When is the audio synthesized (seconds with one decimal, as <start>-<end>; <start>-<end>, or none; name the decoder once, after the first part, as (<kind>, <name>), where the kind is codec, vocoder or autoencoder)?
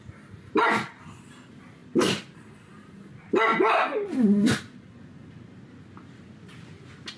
none